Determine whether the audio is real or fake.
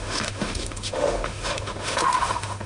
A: fake